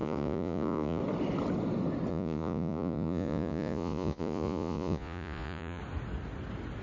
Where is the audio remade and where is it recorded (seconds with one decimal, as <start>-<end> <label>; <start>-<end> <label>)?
0.0-1.0 remade; 1.0-2.1 recorded; 2.1-5.8 remade; 5.8-6.8 recorded